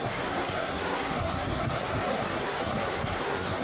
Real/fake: fake